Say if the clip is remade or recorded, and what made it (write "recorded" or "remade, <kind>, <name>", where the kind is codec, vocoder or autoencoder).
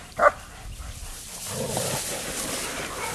recorded